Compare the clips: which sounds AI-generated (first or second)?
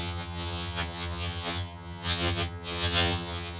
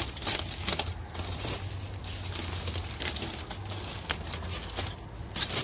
first